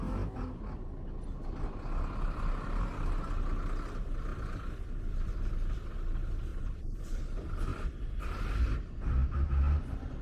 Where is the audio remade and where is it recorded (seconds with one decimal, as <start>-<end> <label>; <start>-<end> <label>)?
0.0-4.3 recorded; 4.3-5.9 remade; 5.9-6.5 recorded; 6.5-7.2 remade; 7.2-7.7 recorded; 7.7-8.2 remade; 8.2-10.2 recorded